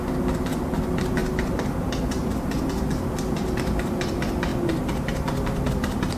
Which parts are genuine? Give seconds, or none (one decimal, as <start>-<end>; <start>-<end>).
0.0-6.2